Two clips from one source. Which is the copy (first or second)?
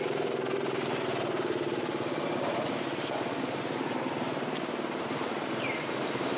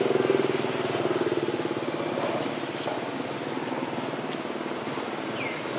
first